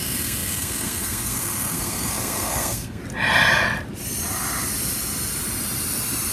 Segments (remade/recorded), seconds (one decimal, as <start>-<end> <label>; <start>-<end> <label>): 0.0-3.0 remade; 3.0-6.3 recorded